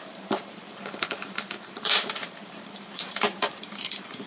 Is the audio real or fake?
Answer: fake